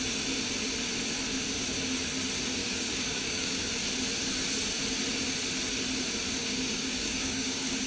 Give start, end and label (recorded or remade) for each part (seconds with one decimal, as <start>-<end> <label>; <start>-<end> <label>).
0.0-2.6 recorded; 2.6-3.7 remade; 3.7-6.4 recorded; 6.4-7.9 remade